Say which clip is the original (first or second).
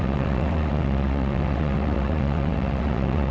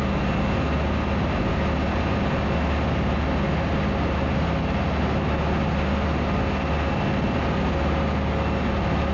second